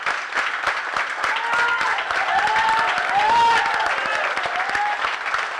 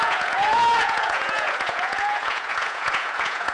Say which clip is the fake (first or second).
second